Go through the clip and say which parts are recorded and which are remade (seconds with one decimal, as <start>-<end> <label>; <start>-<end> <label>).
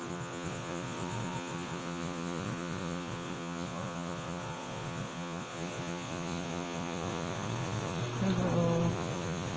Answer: 0.0-8.0 remade; 8.0-8.9 recorded; 8.9-9.6 remade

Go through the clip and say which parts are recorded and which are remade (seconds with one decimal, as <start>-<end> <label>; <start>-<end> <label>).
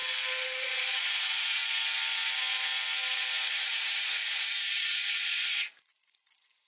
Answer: 0.0-0.6 recorded; 0.6-1.6 remade; 1.6-3.5 recorded; 3.5-6.7 remade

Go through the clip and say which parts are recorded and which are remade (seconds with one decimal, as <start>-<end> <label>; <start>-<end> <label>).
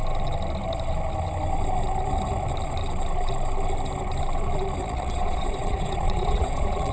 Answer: 0.0-4.8 recorded; 4.8-6.9 remade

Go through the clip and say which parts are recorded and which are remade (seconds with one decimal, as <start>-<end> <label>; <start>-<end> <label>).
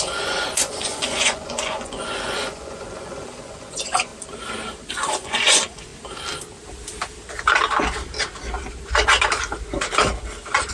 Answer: 0.0-4.1 remade; 4.1-4.9 recorded; 4.9-5.9 remade; 5.9-10.7 recorded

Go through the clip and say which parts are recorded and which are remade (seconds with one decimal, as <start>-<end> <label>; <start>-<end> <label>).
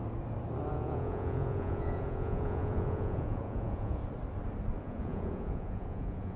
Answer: 0.0-0.7 recorded; 0.7-4.0 remade; 4.0-4.8 recorded; 4.8-6.4 remade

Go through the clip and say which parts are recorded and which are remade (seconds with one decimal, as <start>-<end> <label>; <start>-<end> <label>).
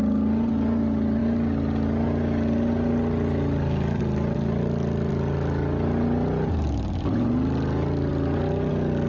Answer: 0.0-9.1 recorded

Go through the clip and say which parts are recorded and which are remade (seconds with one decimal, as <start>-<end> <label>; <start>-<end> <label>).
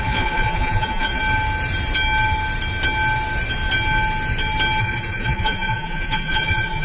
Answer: 0.0-1.2 remade; 1.2-4.8 recorded; 4.8-6.8 remade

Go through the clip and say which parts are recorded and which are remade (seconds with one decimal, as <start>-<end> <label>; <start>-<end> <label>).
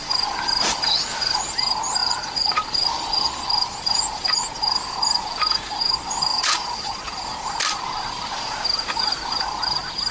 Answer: 0.0-2.0 recorded; 2.0-3.5 remade; 3.5-6.3 recorded; 6.3-7.1 remade; 7.1-10.1 recorded